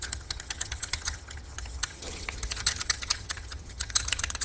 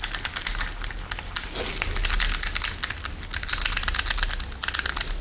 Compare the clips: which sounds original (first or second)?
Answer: second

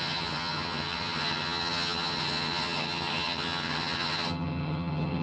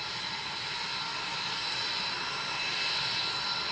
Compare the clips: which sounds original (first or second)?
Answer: second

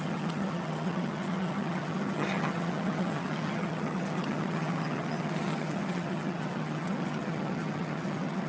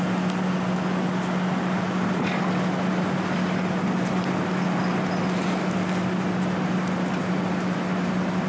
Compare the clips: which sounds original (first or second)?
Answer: second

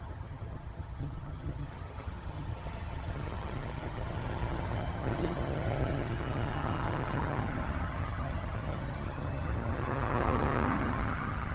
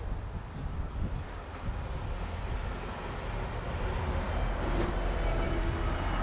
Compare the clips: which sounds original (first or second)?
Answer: second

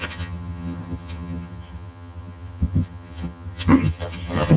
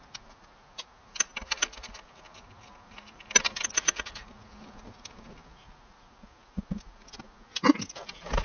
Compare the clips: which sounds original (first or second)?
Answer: second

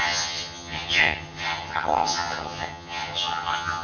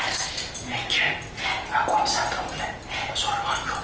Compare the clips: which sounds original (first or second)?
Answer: second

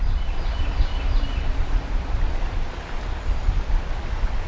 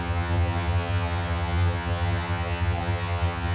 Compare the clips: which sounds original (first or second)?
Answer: first